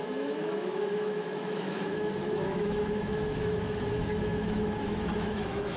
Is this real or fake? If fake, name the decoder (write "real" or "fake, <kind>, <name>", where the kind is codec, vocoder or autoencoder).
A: fake, autoencoder, DAC-VAE